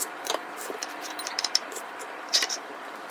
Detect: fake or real fake